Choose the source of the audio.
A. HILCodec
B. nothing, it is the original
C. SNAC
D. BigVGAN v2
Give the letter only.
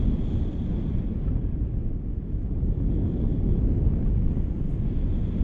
B